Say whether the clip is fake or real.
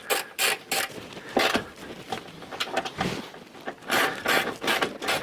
real